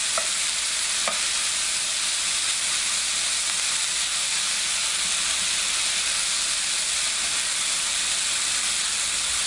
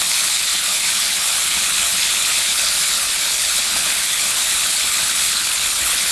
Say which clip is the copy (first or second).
second